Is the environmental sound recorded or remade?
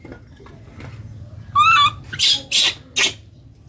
recorded